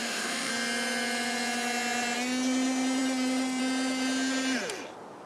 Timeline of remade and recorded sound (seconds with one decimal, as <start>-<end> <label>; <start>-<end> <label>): 0.0-0.5 remade; 0.5-5.3 recorded